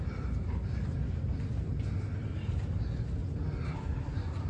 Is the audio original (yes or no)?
yes